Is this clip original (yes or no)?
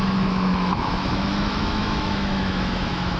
no